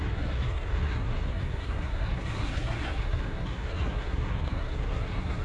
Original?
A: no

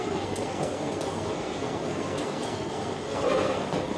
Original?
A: no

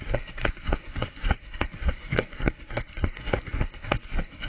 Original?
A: no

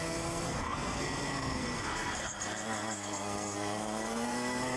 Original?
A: no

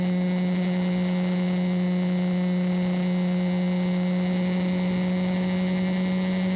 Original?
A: yes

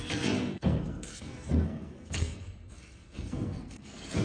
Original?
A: no